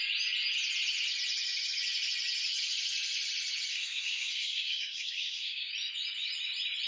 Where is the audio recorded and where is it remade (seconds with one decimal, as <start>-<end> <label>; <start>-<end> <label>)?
0.0-3.7 recorded; 3.7-5.7 remade; 5.7-6.9 recorded